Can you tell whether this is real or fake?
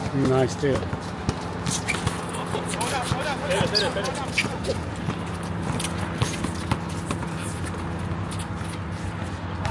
real